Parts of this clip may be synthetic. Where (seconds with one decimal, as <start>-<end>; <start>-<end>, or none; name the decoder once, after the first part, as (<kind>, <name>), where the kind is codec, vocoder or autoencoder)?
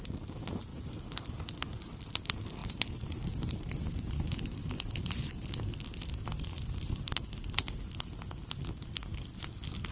0.7-1.4 (vocoder, BigVGAN v2); 2.6-5.5